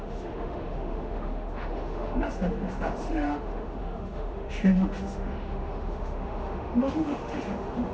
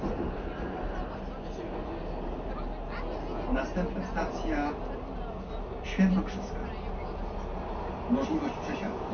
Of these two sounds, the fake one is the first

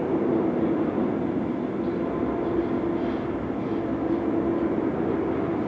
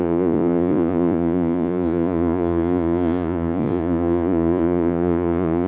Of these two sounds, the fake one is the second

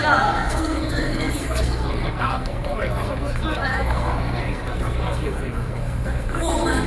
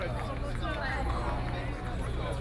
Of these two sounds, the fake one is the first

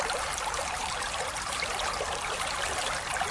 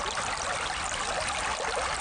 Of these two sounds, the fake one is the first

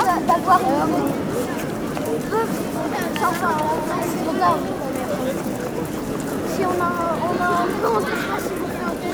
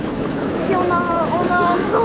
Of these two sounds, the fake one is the second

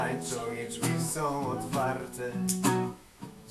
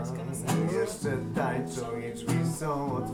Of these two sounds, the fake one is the first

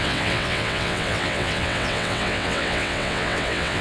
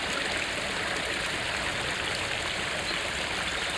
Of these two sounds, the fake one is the first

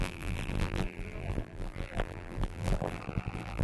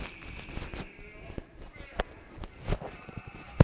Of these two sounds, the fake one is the first